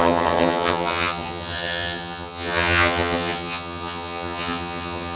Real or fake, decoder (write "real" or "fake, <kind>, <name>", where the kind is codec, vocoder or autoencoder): fake, vocoder, HiFi-GAN